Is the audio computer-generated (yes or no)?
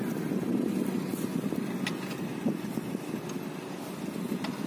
no